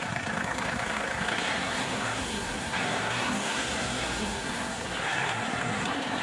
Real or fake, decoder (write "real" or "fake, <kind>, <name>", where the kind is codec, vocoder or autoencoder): fake, codec, SNAC